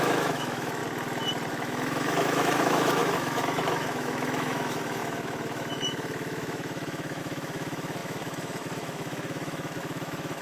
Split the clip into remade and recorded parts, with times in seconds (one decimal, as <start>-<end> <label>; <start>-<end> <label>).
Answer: 0.0-0.8 remade; 0.8-1.5 recorded; 1.5-10.4 remade